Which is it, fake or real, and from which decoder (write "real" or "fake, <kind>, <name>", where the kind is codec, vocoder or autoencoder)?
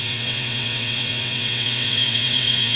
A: fake, vocoder, WaveNeXt